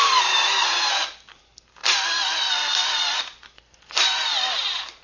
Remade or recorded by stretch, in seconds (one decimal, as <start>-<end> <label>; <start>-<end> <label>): 0.0-1.4 remade; 1.4-5.0 recorded